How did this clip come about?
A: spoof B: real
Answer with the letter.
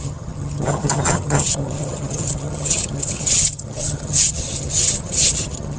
A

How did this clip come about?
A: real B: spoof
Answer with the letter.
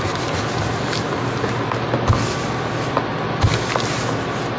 A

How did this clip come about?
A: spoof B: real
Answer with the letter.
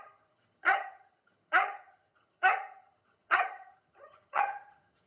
A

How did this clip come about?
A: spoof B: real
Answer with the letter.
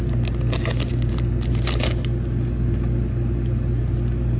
B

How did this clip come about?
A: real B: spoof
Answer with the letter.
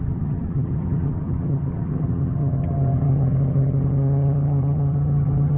B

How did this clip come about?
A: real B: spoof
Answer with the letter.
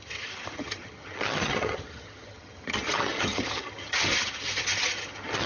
B